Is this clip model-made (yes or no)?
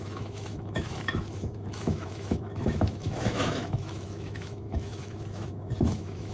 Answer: yes